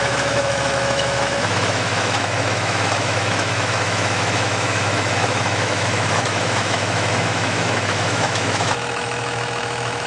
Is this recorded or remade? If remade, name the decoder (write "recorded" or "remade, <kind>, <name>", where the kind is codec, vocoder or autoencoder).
remade, autoencoder, DAC-VAE